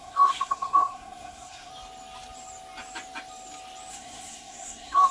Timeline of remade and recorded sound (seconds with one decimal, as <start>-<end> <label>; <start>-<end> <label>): 0.0-1.7 remade; 1.7-3.9 recorded; 3.9-5.1 remade